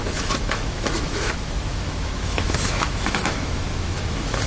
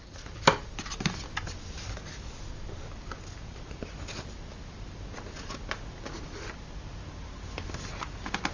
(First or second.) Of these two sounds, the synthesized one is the first